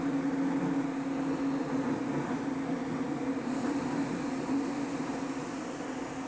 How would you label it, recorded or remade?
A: recorded